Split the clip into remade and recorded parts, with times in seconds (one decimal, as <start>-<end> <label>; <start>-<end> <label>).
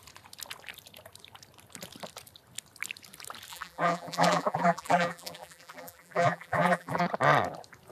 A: 0.0-3.5 recorded; 3.5-7.0 remade; 7.0-7.9 recorded